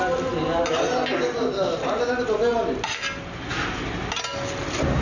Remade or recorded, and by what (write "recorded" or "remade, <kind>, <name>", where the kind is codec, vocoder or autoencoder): recorded